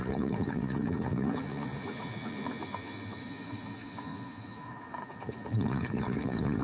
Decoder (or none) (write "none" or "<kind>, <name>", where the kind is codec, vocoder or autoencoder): vocoder, Vocos